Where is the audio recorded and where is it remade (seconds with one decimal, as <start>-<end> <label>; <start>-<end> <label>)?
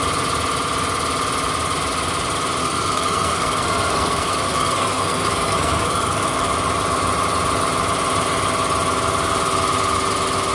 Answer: 0.0-2.6 recorded; 2.6-6.5 remade; 6.5-10.5 recorded